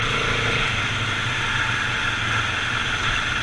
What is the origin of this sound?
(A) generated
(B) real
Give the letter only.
B